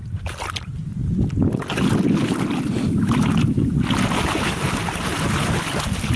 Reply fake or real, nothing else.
real